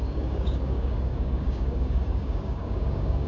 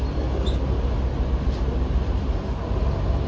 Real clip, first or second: second